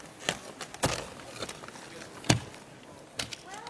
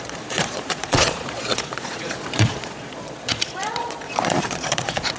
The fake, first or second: second